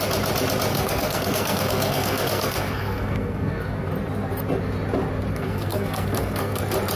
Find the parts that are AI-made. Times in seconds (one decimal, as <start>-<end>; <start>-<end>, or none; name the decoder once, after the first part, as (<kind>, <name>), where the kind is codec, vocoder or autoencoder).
0.7-3.9 (codec, SNAC); 5.3-6.6